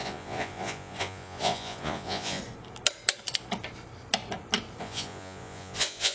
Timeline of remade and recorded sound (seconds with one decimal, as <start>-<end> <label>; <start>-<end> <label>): 0.0-2.4 remade; 2.4-4.8 recorded; 4.8-6.1 remade